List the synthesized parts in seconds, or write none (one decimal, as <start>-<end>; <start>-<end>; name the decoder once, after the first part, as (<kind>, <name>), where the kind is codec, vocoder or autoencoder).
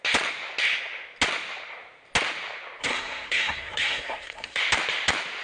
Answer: 2.8-4.6 (codec, SNAC)